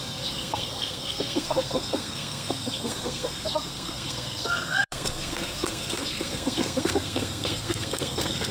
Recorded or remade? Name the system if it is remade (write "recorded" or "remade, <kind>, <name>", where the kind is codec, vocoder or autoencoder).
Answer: remade, codec, SNAC